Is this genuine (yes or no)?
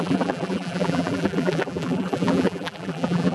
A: no